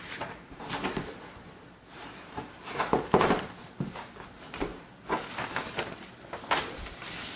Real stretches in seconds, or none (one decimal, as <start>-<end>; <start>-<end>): 4.7-5.8